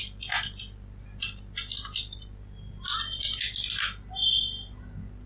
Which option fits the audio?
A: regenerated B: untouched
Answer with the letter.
B